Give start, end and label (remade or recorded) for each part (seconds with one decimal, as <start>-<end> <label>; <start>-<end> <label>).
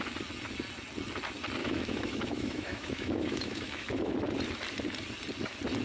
0.0-1.6 recorded; 1.6-4.1 remade; 4.1-5.8 recorded